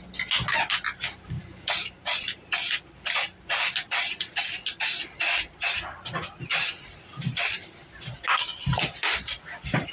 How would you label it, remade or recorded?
remade